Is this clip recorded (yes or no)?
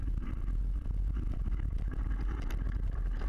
yes